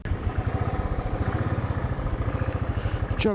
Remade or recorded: recorded